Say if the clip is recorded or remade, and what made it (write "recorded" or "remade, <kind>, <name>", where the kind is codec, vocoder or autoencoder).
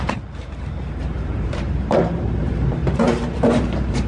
remade, vocoder, BigVGAN v2